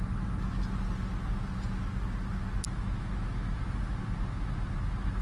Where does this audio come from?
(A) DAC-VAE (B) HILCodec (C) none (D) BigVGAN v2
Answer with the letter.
C